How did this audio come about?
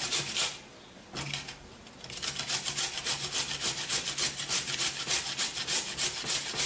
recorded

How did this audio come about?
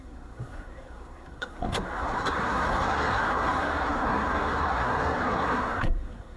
remade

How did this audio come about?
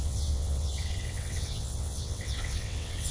remade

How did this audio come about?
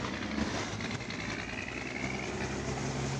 recorded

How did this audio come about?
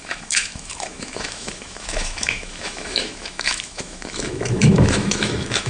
remade